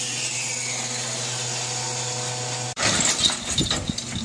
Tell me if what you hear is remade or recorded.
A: recorded